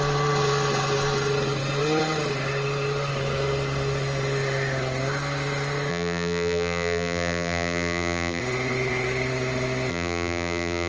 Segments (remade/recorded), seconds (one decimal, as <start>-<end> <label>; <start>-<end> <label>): 0.0-5.9 recorded; 5.9-8.4 remade; 8.4-9.9 recorded; 9.9-10.9 remade